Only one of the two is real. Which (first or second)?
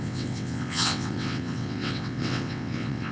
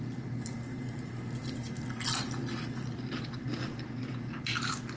second